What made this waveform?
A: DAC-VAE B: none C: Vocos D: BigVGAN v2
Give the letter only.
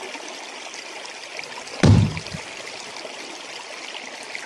B